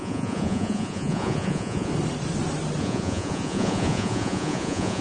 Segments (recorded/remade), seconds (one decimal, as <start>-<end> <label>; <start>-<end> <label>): 0.0-1.9 remade; 1.9-2.8 recorded; 2.8-5.0 remade